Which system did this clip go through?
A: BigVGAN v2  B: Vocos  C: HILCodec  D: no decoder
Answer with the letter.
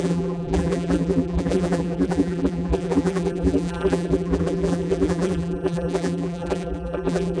A